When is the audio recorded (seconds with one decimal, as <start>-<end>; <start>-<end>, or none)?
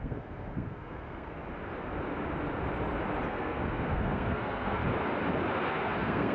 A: 1.4-3.3; 4.8-5.7